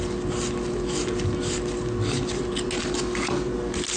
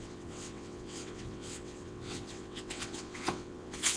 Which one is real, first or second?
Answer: first